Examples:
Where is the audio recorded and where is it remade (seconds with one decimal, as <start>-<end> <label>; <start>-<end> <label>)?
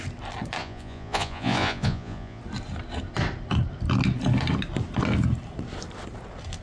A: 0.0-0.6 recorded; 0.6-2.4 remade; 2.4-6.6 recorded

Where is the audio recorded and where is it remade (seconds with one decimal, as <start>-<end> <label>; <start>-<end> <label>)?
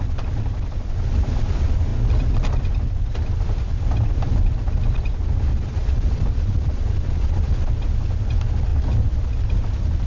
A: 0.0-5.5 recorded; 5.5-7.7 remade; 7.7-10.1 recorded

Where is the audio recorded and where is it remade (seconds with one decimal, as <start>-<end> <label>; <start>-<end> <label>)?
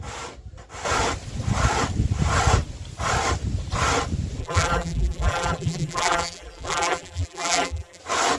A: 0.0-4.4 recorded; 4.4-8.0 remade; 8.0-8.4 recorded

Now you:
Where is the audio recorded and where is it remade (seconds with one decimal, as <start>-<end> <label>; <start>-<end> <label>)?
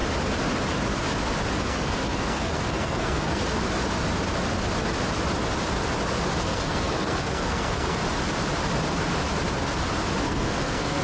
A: 0.0-1.6 recorded; 1.6-3.4 remade; 3.4-6.4 recorded; 6.4-8.0 remade; 8.0-10.2 recorded; 10.2-11.0 remade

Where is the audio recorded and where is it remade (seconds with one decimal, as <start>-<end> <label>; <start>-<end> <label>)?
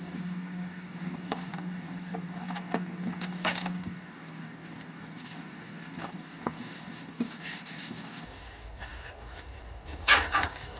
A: 0.0-10.8 remade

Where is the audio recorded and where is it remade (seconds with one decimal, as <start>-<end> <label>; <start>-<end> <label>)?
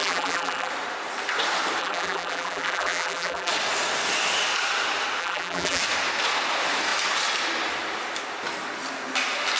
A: 0.0-0.7 remade; 0.7-1.8 recorded; 1.8-3.5 remade; 3.5-5.2 recorded; 5.2-5.8 remade; 5.8-9.6 recorded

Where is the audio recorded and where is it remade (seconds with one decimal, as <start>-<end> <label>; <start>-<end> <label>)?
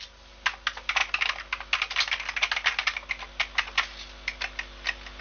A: 0.0-5.2 recorded